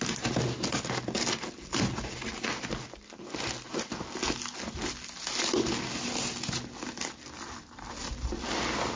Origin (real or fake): real